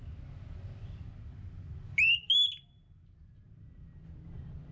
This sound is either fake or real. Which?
real